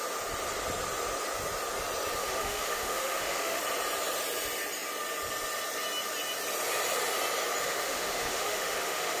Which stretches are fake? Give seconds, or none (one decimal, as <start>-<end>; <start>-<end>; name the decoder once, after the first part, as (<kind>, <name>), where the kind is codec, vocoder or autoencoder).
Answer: 2.2-3.6 (autoencoder, DAC-VAE); 7.6-9.2